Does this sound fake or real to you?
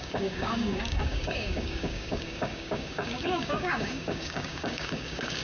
fake